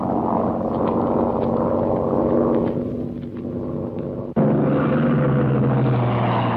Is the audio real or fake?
real